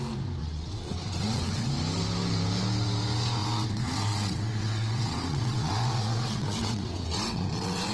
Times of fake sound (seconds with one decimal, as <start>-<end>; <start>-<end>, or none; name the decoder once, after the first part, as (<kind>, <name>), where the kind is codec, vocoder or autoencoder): 0.4-1.7 (vocoder, WaveNeXt); 3.4-7.9